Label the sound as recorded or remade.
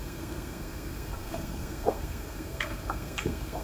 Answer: remade